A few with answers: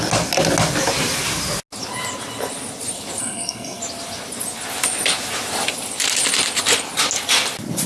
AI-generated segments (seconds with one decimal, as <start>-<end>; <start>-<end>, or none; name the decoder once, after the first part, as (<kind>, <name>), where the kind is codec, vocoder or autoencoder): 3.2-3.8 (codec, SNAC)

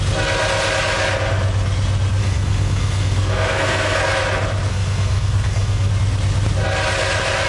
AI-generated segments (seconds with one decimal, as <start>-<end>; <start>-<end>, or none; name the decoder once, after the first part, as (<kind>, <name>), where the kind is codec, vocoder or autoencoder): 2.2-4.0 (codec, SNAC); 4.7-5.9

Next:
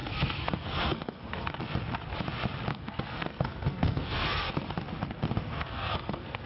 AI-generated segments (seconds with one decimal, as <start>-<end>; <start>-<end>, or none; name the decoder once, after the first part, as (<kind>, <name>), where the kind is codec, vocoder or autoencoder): 0.0-1.6 (codec, SNAC); 2.7-4.5; 5.4-6.5